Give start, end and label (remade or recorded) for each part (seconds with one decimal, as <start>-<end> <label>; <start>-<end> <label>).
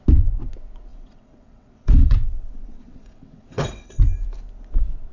0.0-0.9 recorded; 0.9-4.0 remade; 4.0-5.1 recorded